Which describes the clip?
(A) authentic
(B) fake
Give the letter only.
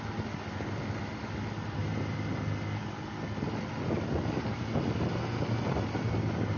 A